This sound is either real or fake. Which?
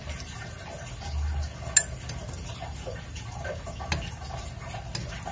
real